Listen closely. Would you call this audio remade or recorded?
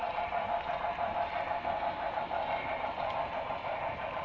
recorded